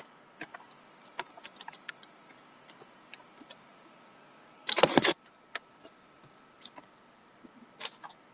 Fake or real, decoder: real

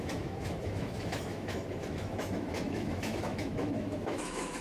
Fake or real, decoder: fake, autoencoder, DAC-VAE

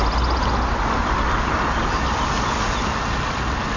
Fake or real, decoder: real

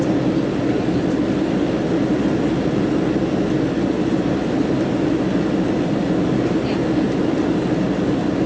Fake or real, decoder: real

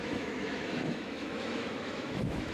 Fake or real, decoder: fake, autoencoder, DAC-VAE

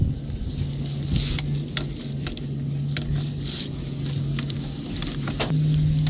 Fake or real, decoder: real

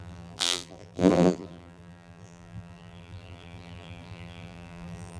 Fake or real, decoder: fake, vocoder, BigVGAN v2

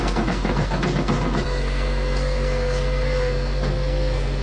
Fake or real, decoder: fake, codec, SNAC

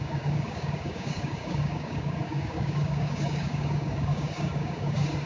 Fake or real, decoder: fake, codec, DAC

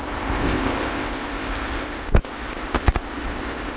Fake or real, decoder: fake, codec, ZipCodec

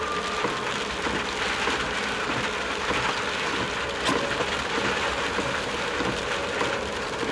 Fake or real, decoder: real